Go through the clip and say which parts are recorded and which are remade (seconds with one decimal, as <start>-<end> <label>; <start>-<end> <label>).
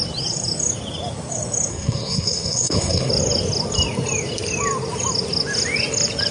0.0-1.7 recorded; 1.7-3.1 remade; 3.1-6.3 recorded